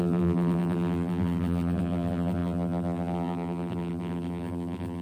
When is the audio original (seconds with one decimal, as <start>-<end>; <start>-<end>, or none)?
none